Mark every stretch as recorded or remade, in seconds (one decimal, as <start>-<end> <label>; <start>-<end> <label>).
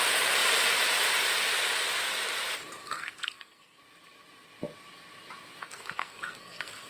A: 0.0-2.8 recorded; 2.8-3.8 remade; 3.8-5.6 recorded; 5.6-6.9 remade